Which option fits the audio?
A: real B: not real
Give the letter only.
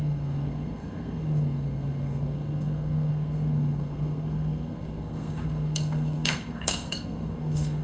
B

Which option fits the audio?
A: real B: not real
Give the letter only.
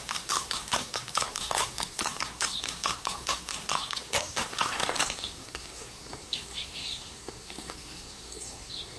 B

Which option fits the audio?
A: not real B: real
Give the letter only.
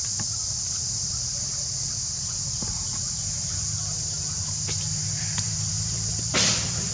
B